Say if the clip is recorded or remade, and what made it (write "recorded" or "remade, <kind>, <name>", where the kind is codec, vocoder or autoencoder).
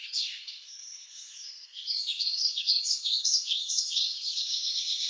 remade, codec, SNAC